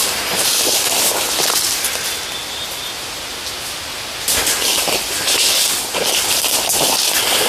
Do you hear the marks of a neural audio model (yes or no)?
no